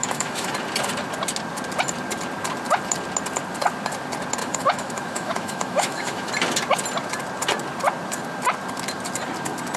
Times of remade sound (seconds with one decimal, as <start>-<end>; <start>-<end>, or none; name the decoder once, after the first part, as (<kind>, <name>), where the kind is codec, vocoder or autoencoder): 0.0-0.5 (autoencoder, DAC-VAE); 4.4-6.3